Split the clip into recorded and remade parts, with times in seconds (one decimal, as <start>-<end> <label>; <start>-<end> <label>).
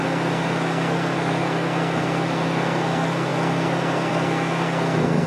0.0-5.3 remade